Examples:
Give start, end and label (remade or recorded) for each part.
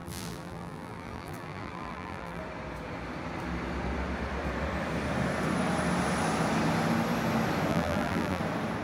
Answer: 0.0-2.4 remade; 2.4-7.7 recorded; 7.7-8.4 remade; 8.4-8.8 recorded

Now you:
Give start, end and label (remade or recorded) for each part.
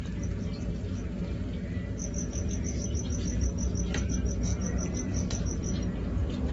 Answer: 0.0-4.5 recorded; 4.5-5.8 remade; 5.8-6.5 recorded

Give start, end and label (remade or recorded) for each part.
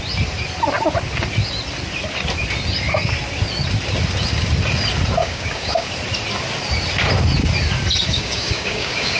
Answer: 0.0-5.2 recorded; 5.2-5.9 remade; 5.9-8.1 recorded; 8.1-9.2 remade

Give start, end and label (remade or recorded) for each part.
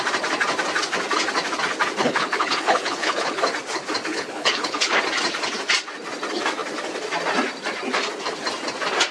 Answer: 0.0-2.0 recorded; 2.0-3.4 remade; 3.4-4.1 recorded; 4.1-5.0 remade; 5.0-9.1 recorded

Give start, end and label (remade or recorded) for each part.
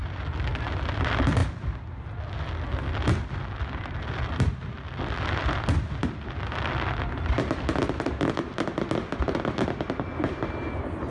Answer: 0.0-11.1 recorded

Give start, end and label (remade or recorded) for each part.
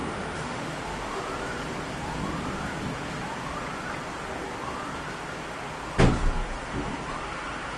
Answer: 0.0-1.2 remade; 1.2-7.8 recorded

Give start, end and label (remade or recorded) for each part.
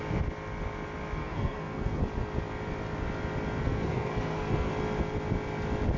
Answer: 0.0-1.2 recorded; 1.2-2.0 remade; 2.0-3.6 recorded; 3.6-4.7 remade; 4.7-6.0 recorded